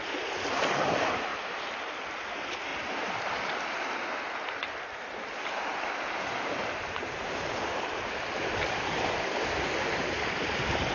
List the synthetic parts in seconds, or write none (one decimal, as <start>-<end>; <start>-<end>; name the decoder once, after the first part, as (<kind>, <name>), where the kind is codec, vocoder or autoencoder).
0.0-1.3 (vocoder, BigVGAN v2); 1.9-2.7; 3.2-10.9